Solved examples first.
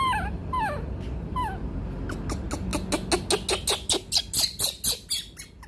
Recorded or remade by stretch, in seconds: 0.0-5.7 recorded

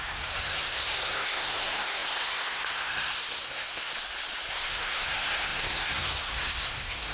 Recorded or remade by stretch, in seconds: 0.0-3.9 remade; 3.9-4.5 recorded; 4.5-7.1 remade

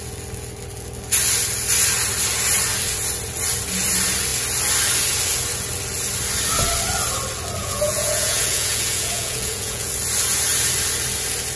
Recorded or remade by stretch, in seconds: 0.0-7.6 recorded; 7.6-9.9 remade; 9.9-11.6 recorded

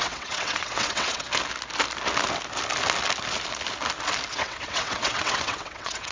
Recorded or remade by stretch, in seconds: 0.0-1.3 remade; 1.3-4.3 recorded; 4.3-6.1 remade

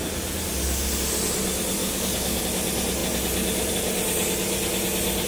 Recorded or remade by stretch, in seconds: 0.0-1.8 recorded; 1.8-2.4 remade; 2.4-5.3 recorded

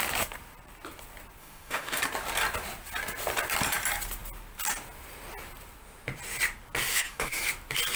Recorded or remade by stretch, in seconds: 0.0-1.4 recorded; 1.4-2.0 remade; 2.0-6.9 recorded; 6.9-7.4 remade; 7.4-8.0 recorded